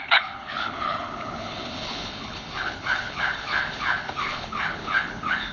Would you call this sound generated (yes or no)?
yes